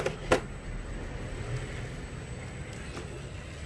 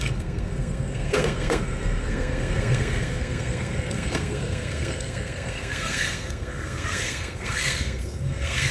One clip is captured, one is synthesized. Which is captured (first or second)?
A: first